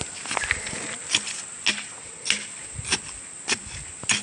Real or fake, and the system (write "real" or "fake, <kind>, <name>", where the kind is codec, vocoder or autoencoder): real